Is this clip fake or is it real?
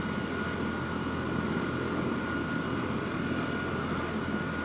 real